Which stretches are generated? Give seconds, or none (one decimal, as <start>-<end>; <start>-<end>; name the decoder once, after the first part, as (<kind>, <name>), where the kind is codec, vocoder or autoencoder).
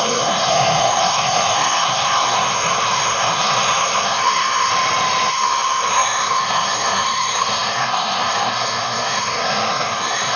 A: 0.0-4.7 (codec, SNAC); 5.3-10.4